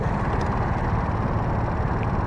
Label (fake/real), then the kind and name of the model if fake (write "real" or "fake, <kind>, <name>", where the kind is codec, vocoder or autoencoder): real